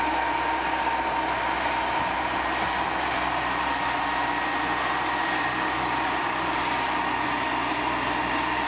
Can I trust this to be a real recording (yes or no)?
yes